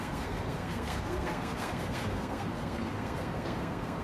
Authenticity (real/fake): fake